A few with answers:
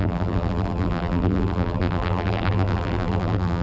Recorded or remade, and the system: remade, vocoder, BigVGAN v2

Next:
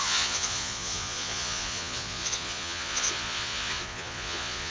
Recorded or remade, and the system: remade, vocoder, Vocos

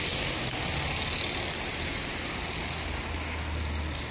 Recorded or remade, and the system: recorded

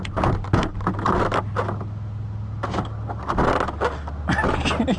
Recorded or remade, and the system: recorded